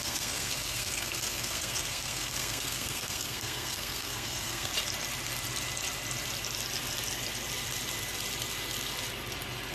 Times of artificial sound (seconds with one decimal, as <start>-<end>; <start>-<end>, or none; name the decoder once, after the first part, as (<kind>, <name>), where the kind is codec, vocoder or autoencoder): 0.0-4.7 (codec, SNAC)